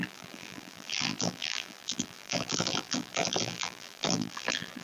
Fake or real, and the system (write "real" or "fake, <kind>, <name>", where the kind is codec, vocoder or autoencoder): fake, vocoder, BigVGAN v2